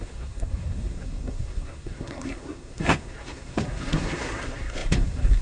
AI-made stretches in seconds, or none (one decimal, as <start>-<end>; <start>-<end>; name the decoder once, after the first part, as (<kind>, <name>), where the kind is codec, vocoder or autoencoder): 0.0-5.4 (codec, SNAC)